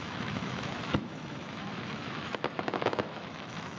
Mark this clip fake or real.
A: fake